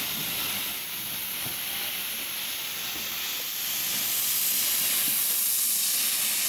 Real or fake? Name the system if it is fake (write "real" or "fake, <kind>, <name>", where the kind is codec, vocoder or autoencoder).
real